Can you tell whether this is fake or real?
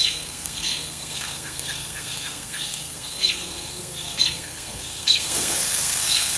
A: fake